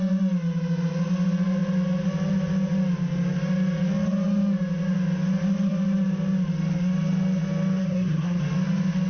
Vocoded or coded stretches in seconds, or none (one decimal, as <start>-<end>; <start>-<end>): 7.8-8.4